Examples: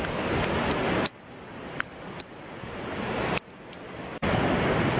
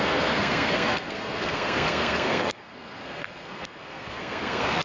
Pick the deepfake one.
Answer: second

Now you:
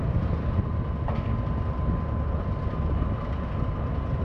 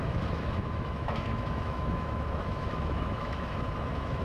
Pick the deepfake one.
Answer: second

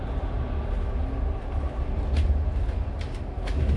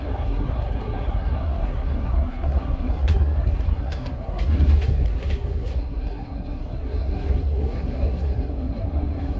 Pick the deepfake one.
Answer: second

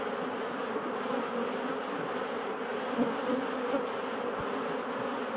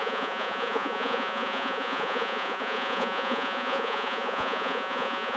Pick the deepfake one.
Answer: second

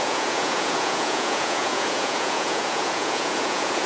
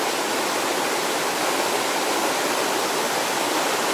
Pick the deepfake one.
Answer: first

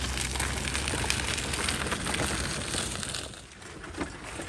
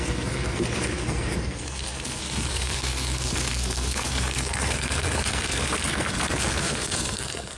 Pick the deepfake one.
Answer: second